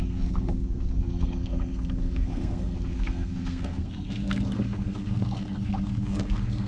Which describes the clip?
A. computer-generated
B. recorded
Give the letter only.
A